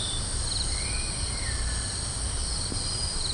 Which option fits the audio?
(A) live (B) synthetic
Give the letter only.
A